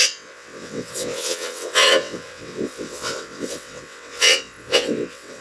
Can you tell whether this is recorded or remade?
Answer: remade